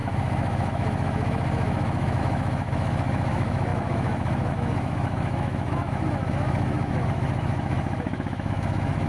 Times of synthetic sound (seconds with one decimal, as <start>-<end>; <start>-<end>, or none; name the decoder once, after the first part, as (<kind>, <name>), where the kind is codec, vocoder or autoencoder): 0.0-9.1 (autoencoder, DAC-VAE)